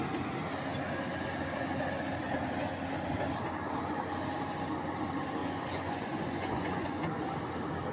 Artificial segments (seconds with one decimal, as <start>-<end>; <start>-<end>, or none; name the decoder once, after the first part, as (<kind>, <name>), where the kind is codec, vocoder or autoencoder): 5.4-7.1 (vocoder, Vocos)